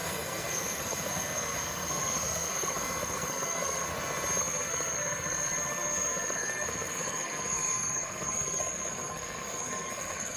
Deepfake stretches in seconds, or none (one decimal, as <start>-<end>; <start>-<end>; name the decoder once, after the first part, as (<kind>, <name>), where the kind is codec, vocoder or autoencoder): 0.0-3.9 (codec, SNAC); 4.4-10.4